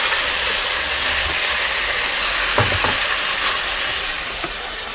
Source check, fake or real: real